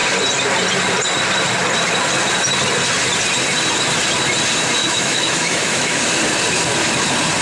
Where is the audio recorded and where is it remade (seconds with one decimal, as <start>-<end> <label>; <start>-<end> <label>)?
0.0-4.8 recorded; 4.8-6.0 remade; 6.0-7.4 recorded